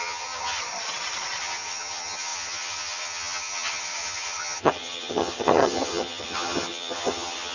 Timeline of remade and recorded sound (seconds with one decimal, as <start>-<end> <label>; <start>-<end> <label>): 0.0-0.6 remade; 0.6-1.4 recorded; 1.4-7.5 remade